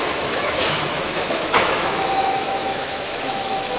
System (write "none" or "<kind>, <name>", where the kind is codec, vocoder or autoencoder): autoencoder, DAC-VAE